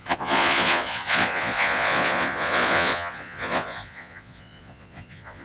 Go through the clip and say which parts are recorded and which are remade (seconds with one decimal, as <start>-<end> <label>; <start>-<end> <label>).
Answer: 0.0-5.4 remade